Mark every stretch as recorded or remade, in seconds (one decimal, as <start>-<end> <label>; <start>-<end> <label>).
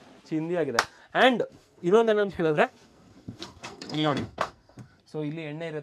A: 0.0-1.5 recorded; 1.5-5.0 remade; 5.0-5.8 recorded